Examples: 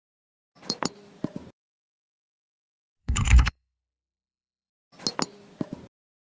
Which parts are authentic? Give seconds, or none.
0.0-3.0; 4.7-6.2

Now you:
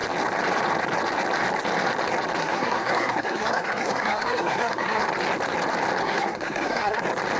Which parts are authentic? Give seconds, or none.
0.0-2.4; 5.0-6.0; 7.0-7.4

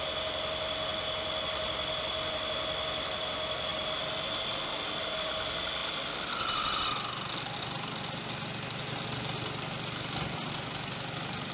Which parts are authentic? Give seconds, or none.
0.0-11.5

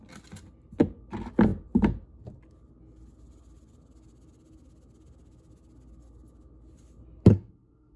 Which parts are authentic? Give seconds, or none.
0.0-7.3

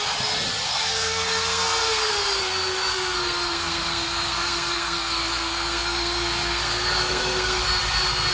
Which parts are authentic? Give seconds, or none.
0.0-0.7; 2.4-2.9; 7.6-8.3

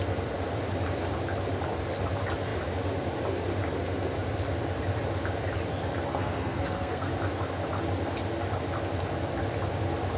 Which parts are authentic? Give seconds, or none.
0.0-6.1; 7.1-10.2